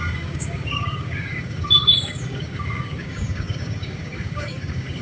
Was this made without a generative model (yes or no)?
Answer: no